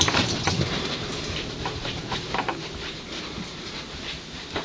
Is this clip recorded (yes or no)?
no